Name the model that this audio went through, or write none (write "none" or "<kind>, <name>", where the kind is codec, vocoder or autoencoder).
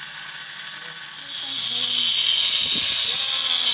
none